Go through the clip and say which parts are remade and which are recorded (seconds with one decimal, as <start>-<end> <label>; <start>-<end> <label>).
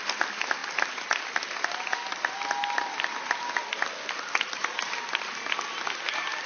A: 0.0-6.5 recorded